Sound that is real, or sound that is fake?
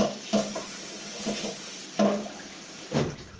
fake